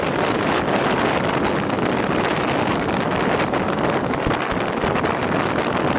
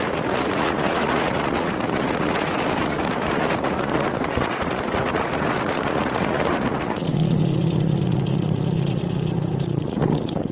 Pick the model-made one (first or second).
second